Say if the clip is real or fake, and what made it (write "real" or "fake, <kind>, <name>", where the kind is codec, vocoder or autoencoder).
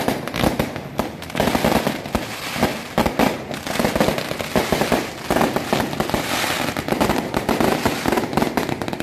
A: real